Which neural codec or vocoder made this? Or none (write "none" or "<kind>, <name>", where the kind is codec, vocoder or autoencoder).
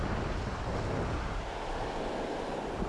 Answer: none